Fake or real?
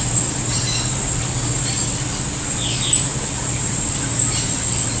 real